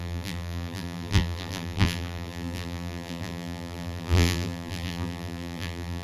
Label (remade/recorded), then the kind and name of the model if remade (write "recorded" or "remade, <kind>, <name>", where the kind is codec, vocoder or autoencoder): remade, vocoder, BigVGAN v2